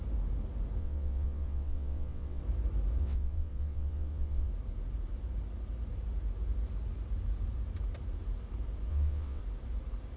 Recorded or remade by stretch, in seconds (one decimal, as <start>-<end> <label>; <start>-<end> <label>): 0.0-0.8 recorded; 0.8-2.4 remade; 2.4-3.0 recorded; 3.0-4.5 remade; 4.5-8.9 recorded; 8.9-9.4 remade; 9.4-10.2 recorded